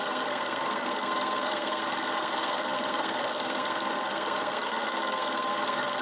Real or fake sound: fake